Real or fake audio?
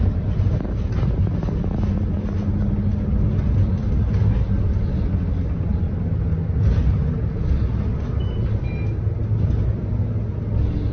real